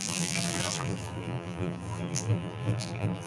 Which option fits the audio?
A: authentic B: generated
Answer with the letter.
B